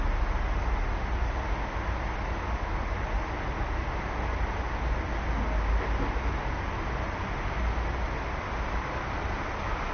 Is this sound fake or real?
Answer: real